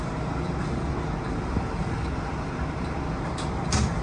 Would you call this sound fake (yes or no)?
no